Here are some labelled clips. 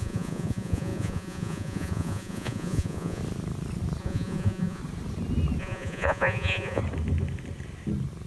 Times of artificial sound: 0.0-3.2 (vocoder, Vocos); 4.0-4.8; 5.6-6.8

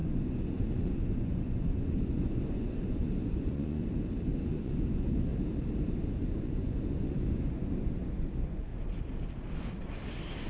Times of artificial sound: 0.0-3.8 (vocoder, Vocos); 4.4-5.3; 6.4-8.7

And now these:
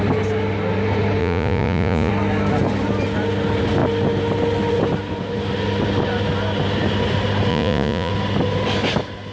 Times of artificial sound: 1.2-2.1 (vocoder, Vocos); 7.5-8.1